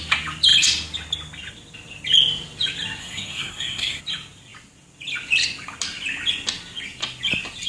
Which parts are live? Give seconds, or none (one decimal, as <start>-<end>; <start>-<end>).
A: 0.0-3.0; 4.0-7.7